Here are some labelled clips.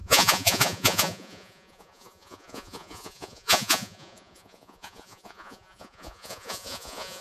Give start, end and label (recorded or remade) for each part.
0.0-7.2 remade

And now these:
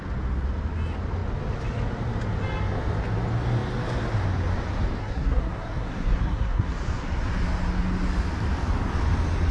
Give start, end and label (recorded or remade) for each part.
0.0-5.0 recorded; 5.0-6.7 remade; 6.7-9.5 recorded

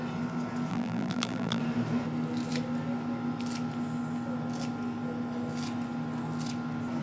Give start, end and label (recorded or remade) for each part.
0.0-0.7 recorded; 0.7-1.6 remade; 1.6-7.0 recorded

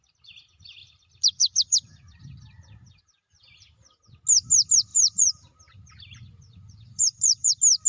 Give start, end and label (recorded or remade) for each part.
0.0-0.8 recorded; 0.8-4.0 remade; 4.0-4.9 recorded; 4.9-7.5 remade; 7.5-7.9 recorded

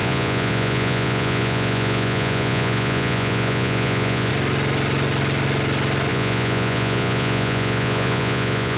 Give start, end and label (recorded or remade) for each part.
0.0-4.3 remade; 4.3-6.1 recorded; 6.1-8.8 remade

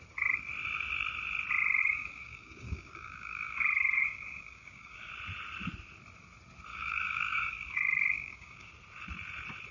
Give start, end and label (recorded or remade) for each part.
0.0-1.8 recorded; 1.8-5.1 remade; 5.1-6.7 recorded; 6.7-8.7 remade; 8.7-9.7 recorded

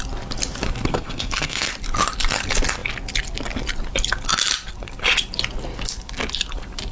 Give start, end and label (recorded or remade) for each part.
0.0-0.9 recorded; 0.9-1.7 remade; 1.7-6.9 recorded